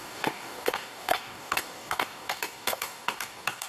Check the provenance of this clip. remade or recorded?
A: remade